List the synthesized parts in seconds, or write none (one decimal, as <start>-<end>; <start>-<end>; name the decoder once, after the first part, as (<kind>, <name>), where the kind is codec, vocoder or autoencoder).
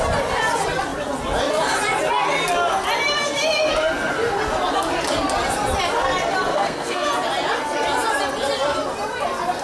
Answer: 6.5-7.1 (codec, SNAC)